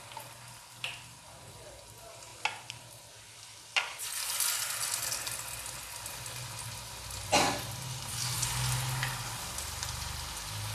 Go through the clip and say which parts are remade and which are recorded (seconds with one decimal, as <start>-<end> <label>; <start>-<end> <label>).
0.0-10.7 recorded